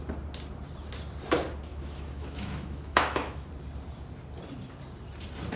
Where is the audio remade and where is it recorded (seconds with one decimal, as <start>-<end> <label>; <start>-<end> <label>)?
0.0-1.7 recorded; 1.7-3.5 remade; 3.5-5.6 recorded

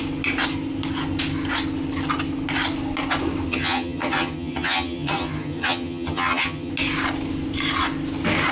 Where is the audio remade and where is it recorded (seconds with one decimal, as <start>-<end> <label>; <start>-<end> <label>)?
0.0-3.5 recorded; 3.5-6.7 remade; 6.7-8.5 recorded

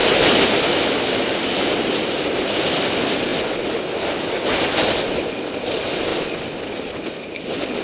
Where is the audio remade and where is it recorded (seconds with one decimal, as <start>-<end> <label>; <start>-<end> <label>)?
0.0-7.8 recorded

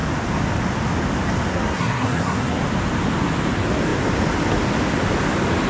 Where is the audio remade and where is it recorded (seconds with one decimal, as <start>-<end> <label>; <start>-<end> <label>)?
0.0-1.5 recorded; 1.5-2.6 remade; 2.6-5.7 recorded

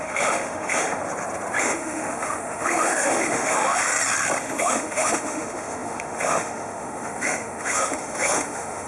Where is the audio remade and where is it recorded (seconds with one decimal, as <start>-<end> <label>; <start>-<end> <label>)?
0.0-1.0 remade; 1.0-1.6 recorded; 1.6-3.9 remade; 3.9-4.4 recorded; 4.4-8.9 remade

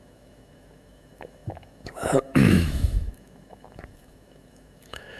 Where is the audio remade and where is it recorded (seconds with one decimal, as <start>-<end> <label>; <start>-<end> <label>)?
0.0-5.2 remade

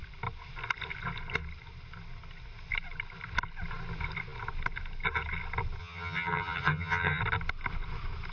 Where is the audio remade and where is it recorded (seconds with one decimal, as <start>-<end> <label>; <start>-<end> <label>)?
0.0-5.8 recorded; 5.8-7.2 remade; 7.2-8.3 recorded

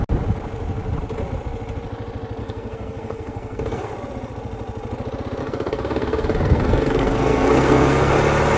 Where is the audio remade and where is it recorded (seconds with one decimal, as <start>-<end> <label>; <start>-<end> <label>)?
0.0-2.4 recorded; 2.4-3.9 remade; 3.9-5.4 recorded; 5.4-8.1 remade; 8.1-8.6 recorded